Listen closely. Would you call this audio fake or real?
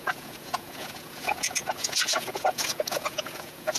fake